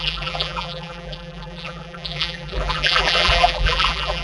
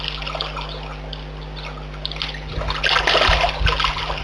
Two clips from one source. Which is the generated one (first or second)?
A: first